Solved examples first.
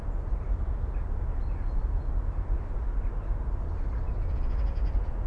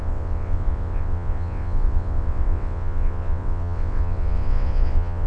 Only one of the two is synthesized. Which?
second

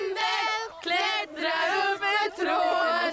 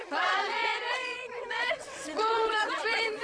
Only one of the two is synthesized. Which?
second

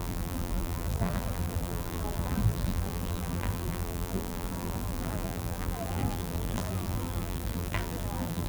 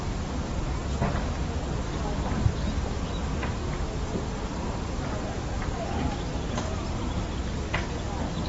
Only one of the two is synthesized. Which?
first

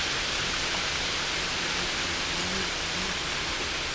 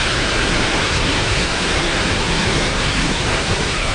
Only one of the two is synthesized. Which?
second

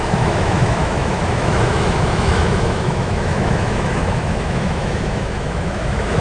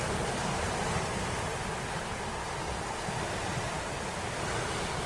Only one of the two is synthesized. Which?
first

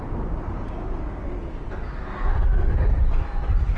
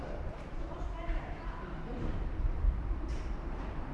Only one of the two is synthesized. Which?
second